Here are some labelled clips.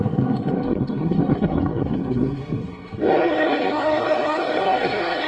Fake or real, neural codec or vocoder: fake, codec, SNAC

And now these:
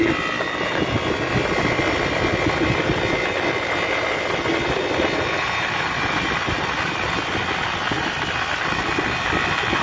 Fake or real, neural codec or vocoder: real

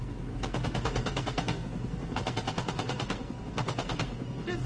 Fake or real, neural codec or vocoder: fake, codec, SNAC